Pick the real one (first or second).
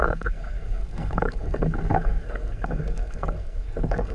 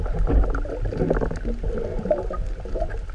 second